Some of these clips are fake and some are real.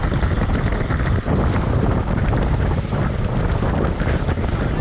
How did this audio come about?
real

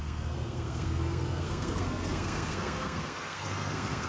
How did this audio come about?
fake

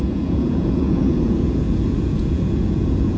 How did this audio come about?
fake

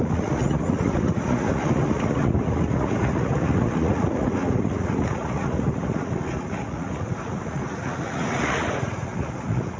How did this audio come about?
fake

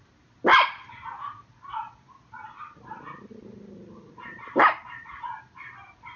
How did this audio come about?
real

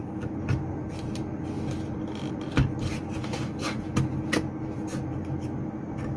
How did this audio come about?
real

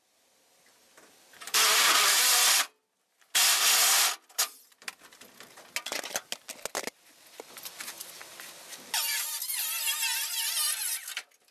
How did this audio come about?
real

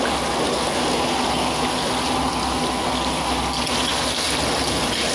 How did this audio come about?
real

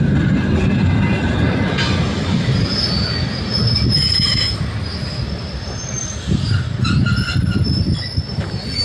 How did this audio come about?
real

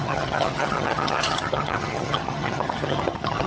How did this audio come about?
fake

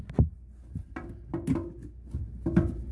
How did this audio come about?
real